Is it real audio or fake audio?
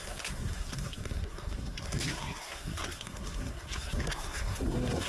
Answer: fake